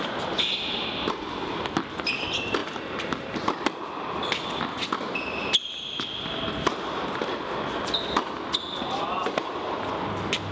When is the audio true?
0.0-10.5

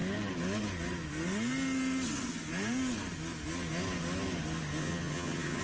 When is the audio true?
0.0-4.8